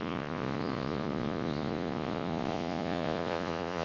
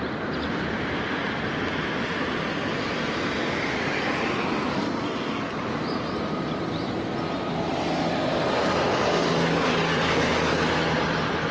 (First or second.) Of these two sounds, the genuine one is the second